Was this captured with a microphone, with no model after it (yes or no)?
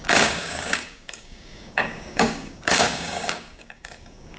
no